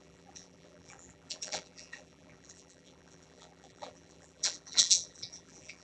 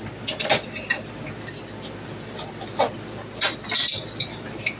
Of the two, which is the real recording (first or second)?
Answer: second